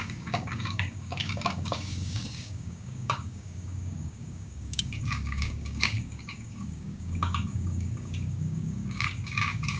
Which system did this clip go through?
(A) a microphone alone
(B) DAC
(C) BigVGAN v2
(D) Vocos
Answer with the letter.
B